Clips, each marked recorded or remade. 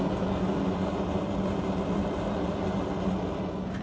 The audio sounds recorded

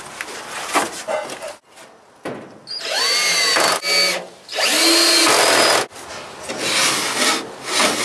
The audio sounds recorded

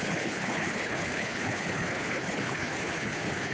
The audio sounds remade